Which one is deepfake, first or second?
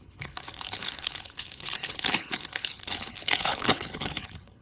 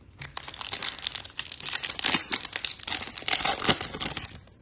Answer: first